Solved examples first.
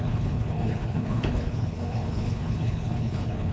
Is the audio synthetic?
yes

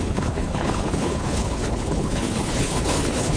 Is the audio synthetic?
yes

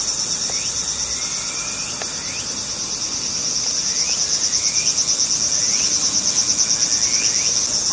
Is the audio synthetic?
no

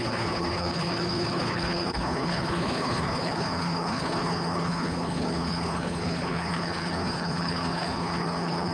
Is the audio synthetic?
yes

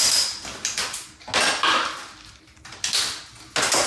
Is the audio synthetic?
no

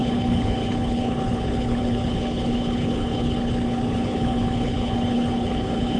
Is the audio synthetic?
yes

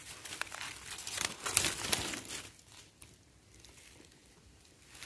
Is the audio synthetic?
no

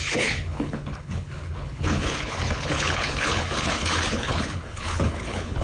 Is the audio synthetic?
yes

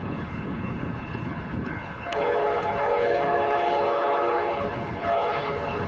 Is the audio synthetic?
yes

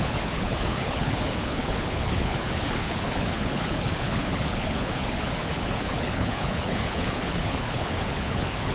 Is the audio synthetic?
yes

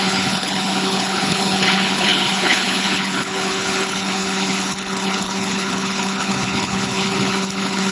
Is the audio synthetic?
yes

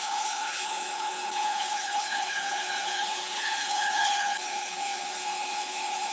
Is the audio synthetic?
yes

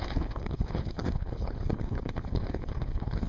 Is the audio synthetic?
yes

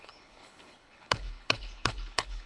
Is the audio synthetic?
yes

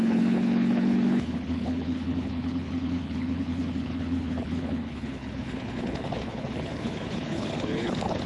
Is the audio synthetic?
yes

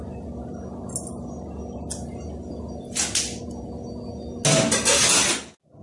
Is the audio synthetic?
no